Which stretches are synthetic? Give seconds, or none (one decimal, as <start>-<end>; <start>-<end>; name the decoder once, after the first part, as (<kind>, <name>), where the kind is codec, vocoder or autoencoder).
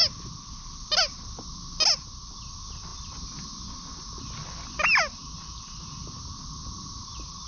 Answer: none